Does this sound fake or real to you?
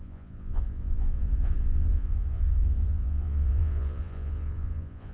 fake